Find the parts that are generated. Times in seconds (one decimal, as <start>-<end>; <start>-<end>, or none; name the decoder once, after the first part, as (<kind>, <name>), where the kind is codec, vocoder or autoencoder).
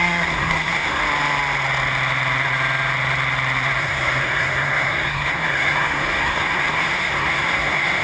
0.0-1.0 (codec, SNAC); 3.8-8.0